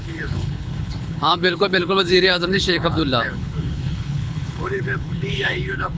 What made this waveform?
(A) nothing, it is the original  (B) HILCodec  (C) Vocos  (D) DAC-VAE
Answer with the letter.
B